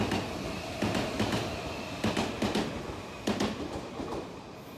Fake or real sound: real